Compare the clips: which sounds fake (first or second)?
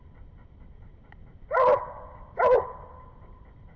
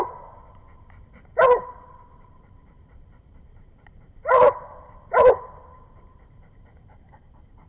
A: second